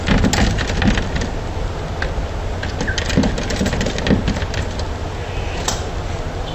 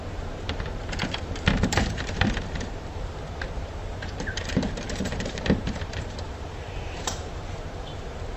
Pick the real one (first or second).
first